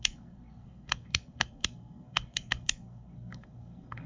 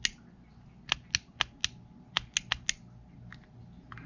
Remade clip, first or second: first